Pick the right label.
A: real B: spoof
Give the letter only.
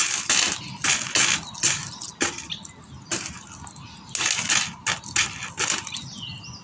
A